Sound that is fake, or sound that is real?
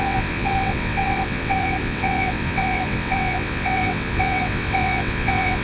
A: fake